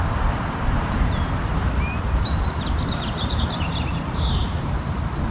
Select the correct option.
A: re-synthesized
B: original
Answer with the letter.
A